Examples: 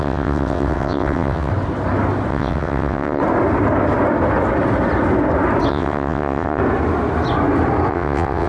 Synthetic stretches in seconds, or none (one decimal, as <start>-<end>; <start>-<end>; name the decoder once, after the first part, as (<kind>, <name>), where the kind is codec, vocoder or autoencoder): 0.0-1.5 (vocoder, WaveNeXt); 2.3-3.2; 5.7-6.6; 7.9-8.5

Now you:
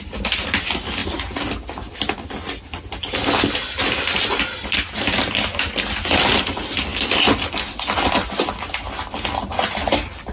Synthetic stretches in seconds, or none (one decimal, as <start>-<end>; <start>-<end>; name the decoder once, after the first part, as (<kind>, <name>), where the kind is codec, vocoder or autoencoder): none

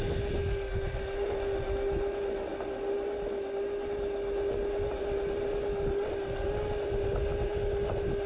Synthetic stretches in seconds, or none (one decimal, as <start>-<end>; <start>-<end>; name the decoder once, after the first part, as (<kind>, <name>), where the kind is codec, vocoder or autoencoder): none